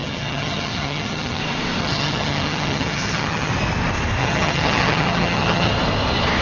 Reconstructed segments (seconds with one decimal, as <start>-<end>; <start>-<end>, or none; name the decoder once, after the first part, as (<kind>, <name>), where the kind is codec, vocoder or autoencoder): 0.0-1.4 (vocoder, HiFi-GAN); 1.8-3.5; 4.2-5.7